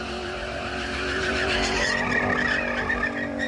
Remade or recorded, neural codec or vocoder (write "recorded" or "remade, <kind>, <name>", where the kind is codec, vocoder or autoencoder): recorded